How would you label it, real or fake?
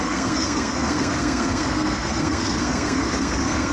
fake